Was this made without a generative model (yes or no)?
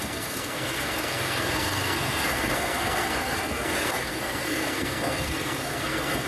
no